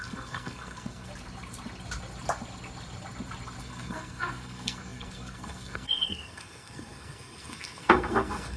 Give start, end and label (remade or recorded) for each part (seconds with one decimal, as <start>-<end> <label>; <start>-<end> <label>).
0.0-1.1 remade; 1.1-3.6 recorded; 3.6-8.6 remade